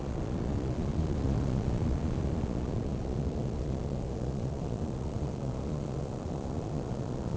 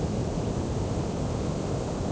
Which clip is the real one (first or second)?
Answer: second